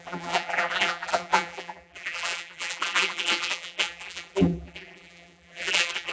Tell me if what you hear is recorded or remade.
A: remade